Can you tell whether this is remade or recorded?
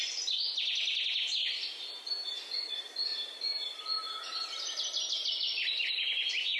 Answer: recorded